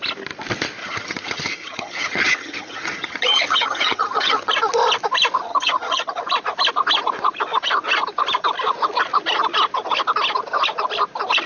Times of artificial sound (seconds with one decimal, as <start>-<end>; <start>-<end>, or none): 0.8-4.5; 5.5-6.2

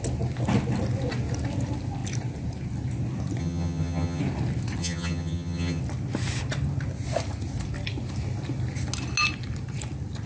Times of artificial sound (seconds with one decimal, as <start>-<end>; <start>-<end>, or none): 3.4-4.2; 4.8-5.8

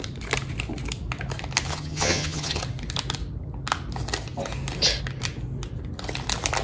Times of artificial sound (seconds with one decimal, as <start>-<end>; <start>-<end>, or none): 1.7-2.6